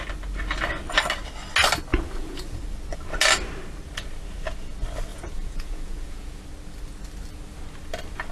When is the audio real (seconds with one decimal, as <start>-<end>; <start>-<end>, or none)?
0.0-1.9; 2.6-5.1; 6.4-8.3